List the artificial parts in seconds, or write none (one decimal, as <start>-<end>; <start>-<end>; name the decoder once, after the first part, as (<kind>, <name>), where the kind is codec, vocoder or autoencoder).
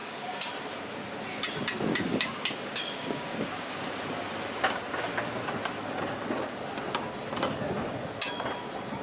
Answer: 0.0-0.5 (codec, DAC); 1.9-3.6